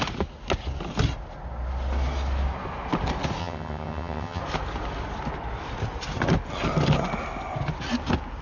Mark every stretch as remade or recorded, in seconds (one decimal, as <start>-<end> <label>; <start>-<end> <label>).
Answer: 0.0-3.4 recorded; 3.4-4.4 remade; 4.4-8.4 recorded